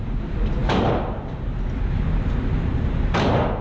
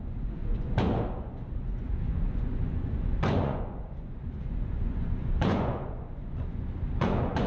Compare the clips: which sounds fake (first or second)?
second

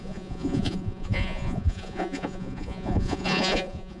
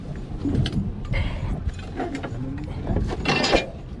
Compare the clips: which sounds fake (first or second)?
first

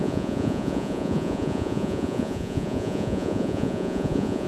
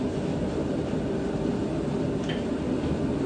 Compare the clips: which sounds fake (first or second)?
first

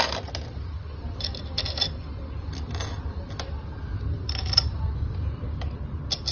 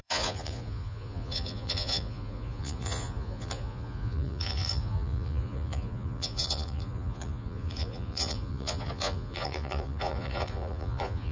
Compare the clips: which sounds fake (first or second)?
second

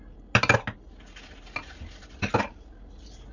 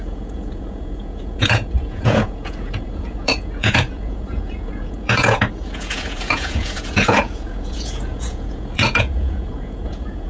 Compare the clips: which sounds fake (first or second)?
second